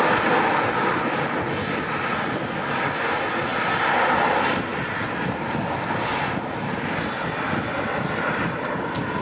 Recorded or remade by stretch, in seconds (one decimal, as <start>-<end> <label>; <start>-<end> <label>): 0.0-9.2 recorded